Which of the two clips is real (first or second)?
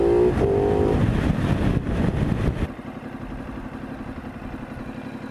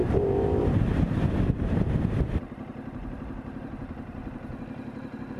first